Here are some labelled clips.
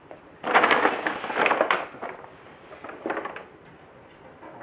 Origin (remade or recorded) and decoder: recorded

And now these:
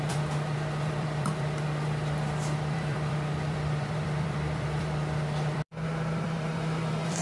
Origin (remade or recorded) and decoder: remade, vocoder, BigVGAN v2